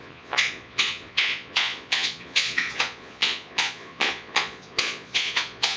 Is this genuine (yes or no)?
no